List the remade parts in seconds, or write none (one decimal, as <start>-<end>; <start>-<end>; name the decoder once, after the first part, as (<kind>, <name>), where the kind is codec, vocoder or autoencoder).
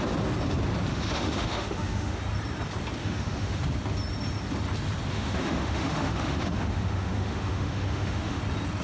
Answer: 0.9-2.2 (autoencoder, DAC-VAE); 3.0-3.6; 5.1-8.4